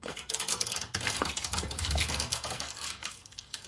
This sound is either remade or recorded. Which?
remade